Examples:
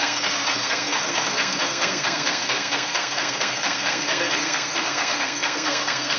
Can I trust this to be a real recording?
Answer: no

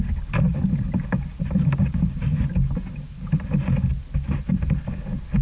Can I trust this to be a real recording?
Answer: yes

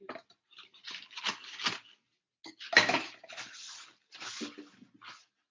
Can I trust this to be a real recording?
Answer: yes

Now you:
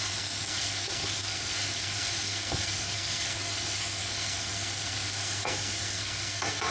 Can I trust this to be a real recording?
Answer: no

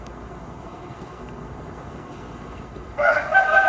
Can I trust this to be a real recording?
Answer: no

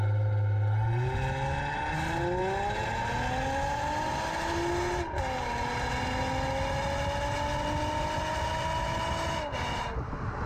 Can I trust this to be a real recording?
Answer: yes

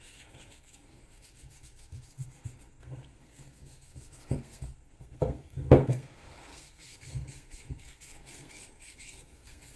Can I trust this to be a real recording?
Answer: no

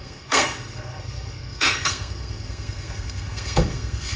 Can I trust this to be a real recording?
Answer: no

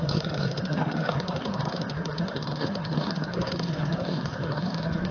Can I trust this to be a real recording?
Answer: no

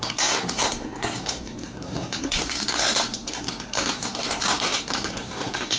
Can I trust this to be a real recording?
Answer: no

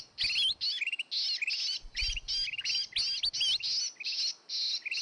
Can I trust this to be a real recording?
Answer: yes